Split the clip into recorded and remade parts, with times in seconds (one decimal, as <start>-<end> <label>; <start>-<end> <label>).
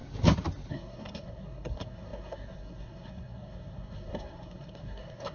0.0-0.7 recorded; 0.7-5.3 remade